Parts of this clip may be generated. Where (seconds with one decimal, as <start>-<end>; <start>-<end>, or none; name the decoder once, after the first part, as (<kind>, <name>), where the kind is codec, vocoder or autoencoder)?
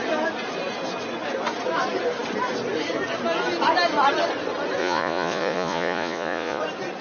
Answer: 4.8-6.6 (vocoder, Vocos)